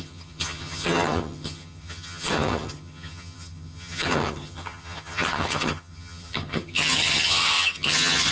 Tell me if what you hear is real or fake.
fake